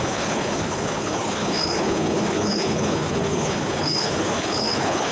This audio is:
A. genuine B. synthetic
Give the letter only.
B